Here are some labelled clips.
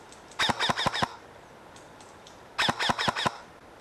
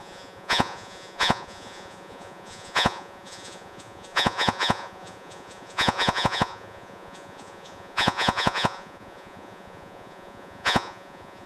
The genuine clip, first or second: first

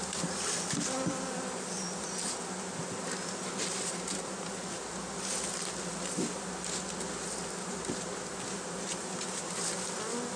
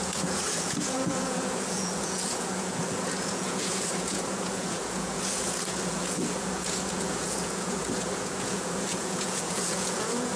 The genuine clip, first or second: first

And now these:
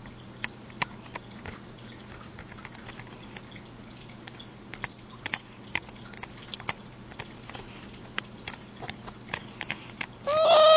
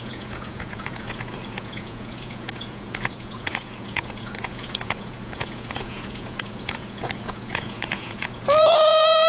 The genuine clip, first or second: first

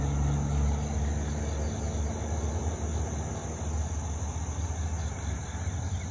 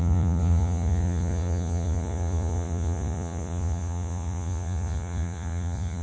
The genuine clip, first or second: first